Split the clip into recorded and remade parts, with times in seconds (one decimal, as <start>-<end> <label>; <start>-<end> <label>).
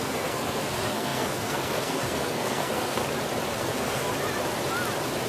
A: 0.0-3.0 remade; 3.0-3.6 recorded; 3.6-4.1 remade; 4.1-5.3 recorded